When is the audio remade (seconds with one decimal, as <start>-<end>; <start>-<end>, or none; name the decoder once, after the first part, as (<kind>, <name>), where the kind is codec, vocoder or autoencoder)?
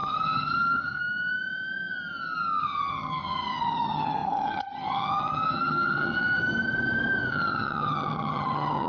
0.0-1.0 (vocoder, HiFi-GAN); 2.6-6.4; 7.3-8.9